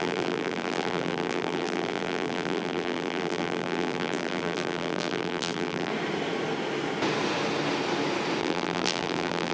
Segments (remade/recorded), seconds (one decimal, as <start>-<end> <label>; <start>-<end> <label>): 0.0-5.9 remade; 5.9-8.4 recorded; 8.4-9.5 remade